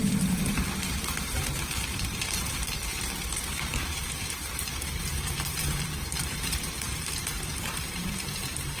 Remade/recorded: remade